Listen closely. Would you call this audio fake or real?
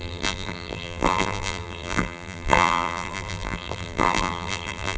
fake